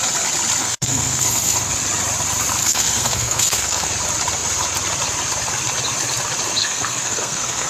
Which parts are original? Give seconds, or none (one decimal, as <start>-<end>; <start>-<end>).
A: 0.0-0.6; 1.7-2.6; 3.9-6.6